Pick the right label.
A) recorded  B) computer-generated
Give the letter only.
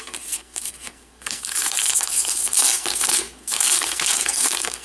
B